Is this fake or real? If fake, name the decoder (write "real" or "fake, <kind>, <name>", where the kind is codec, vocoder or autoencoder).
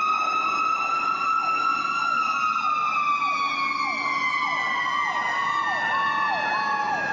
real